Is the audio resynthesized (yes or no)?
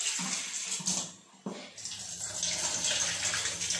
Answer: no